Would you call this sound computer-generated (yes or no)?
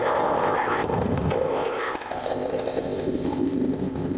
yes